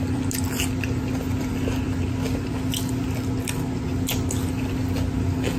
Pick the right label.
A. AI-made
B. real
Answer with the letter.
B